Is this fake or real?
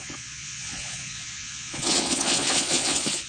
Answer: fake